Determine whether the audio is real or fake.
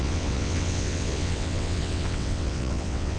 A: fake